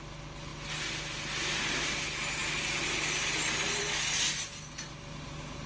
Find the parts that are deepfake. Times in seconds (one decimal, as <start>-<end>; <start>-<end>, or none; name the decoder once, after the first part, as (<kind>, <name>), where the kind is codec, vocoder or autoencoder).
none

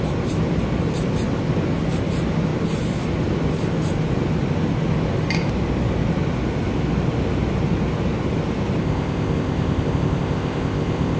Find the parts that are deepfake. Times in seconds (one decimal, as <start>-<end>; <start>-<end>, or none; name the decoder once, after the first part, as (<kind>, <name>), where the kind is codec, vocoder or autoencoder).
8.8-11.2 (codec, ZipCodec)

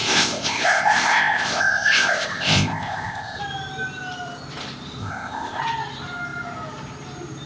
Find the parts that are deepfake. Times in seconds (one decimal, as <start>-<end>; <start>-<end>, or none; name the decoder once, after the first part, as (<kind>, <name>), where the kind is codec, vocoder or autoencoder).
0.0-3.4 (codec, ZipCodec); 5.0-5.6

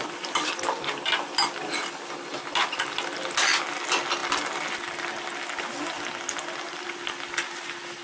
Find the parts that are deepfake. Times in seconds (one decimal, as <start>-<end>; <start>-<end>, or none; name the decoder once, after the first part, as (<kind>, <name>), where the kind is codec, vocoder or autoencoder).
none

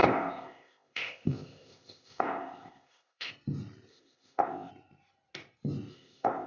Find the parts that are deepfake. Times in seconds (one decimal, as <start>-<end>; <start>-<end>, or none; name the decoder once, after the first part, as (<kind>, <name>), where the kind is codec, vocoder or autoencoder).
0.0-3.3 (codec, ZipCodec); 3.9-4.7; 5.9-6.5

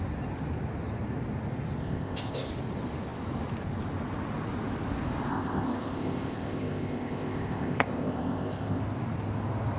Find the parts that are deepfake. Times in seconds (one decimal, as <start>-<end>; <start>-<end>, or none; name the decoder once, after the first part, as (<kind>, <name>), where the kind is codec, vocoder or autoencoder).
1.8-2.5 (codec, ZipCodec); 5.3-8.8

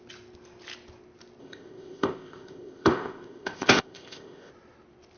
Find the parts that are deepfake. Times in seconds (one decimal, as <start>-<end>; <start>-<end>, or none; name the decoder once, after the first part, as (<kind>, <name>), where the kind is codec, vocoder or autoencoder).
1.4-4.5 (codec, ZipCodec)